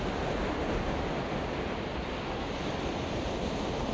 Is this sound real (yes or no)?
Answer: yes